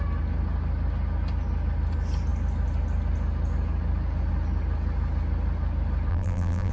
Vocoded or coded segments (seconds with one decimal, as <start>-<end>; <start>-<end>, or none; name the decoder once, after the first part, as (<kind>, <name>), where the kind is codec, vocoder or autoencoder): 6.1-6.7 (vocoder, BigVGAN v2)